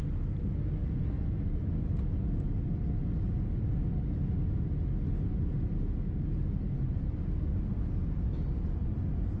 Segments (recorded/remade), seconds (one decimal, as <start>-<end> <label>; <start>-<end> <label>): 0.0-9.4 recorded